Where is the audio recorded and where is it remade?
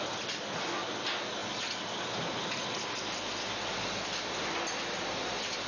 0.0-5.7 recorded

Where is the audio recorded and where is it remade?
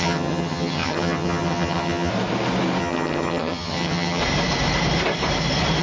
0.0-2.1 remade; 2.1-2.8 recorded; 2.8-4.2 remade; 4.2-5.8 recorded